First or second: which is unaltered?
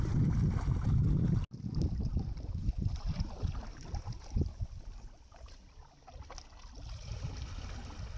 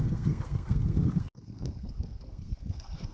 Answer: first